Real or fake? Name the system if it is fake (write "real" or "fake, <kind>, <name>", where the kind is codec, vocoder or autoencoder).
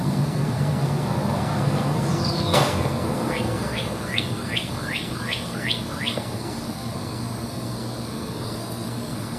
fake, codec, SNAC